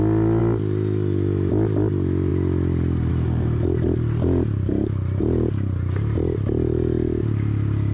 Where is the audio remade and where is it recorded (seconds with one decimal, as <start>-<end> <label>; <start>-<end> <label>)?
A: 0.0-7.9 recorded